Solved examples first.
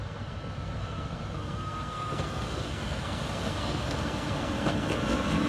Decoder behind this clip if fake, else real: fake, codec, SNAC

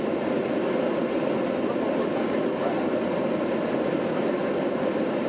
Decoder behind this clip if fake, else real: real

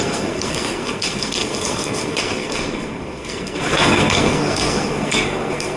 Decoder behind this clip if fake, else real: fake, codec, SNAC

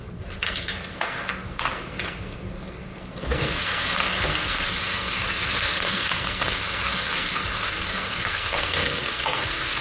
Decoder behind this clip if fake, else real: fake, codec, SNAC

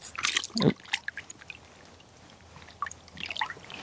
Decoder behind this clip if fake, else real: real